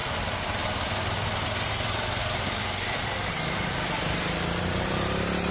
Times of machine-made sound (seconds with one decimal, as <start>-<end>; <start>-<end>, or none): none